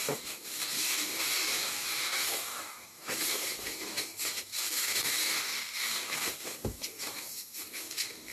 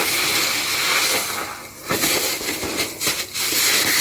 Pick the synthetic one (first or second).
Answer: first